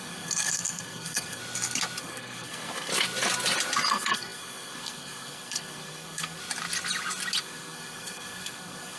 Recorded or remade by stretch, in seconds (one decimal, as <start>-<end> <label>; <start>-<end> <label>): 0.0-1.4 remade; 1.4-2.0 recorded; 2.0-2.9 remade; 2.9-3.9 recorded; 3.9-6.4 remade; 6.4-7.4 recorded; 7.4-9.0 remade